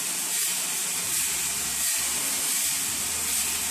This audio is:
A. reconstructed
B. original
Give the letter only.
B